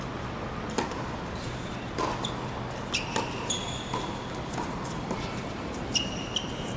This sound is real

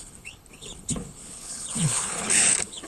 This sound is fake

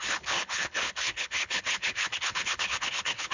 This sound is fake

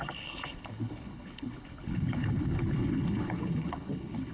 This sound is fake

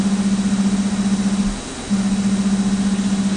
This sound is real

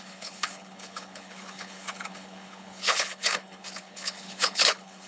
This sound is fake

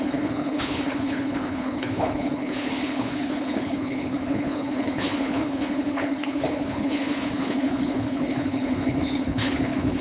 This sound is fake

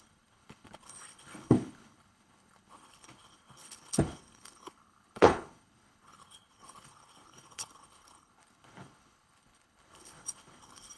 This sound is fake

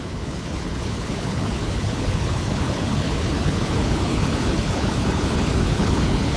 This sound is fake